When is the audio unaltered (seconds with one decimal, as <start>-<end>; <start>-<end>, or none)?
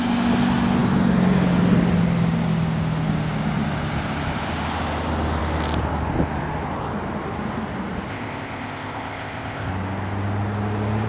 0.0-8.1; 9.7-11.1